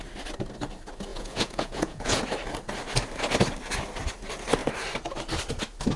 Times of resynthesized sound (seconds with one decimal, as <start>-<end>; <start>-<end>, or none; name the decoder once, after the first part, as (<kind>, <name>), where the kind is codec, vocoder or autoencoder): 1.1-2.2 (vocoder, Vocos)

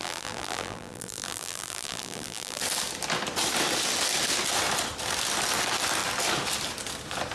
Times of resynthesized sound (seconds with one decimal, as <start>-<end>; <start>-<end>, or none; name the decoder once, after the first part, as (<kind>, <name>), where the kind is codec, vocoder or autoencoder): 0.0-2.6 (vocoder, BigVGAN v2)

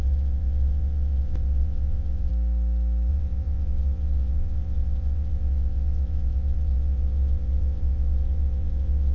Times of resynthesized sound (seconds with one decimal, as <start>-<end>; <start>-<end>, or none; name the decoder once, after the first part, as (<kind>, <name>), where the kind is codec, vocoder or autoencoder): 0.0-2.3 (vocoder, WaveNeXt); 3.1-9.1

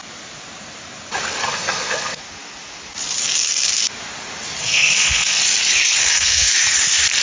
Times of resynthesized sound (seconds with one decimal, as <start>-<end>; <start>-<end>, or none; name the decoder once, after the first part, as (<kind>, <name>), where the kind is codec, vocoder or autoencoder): 1.4-2.2 (codec, SNAC); 4.6-5.4; 6.0-6.5

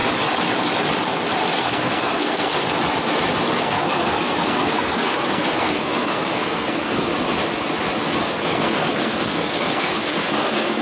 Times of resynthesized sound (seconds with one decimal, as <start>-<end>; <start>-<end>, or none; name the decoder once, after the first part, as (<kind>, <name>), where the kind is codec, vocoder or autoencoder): 1.6-2.6 (codec, SNAC); 3.6-7.1; 8.2-10.8

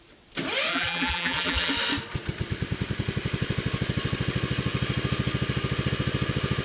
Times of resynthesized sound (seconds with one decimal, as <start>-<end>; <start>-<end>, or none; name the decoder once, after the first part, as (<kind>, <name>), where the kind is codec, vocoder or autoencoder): 0.7-1.7 (vocoder, BigVGAN v2)